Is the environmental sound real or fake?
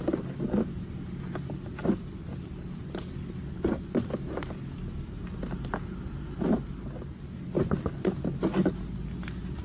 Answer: real